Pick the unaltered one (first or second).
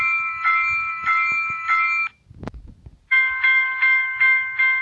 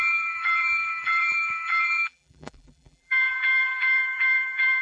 first